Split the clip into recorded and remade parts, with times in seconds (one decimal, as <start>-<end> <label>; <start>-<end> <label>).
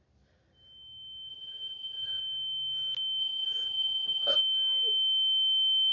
0.0-1.3 recorded; 1.3-2.2 remade; 2.2-3.2 recorded; 3.2-4.4 remade; 4.4-5.9 recorded